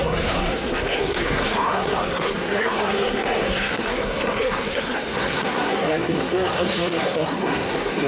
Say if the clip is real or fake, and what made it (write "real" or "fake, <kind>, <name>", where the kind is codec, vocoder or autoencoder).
fake, codec, SNAC